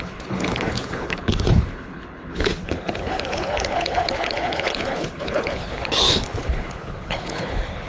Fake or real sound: fake